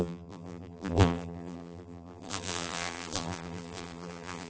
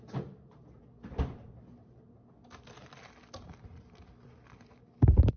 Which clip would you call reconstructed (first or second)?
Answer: first